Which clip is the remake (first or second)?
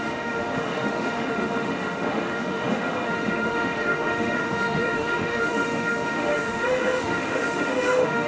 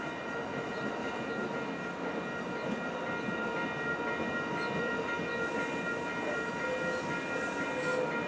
first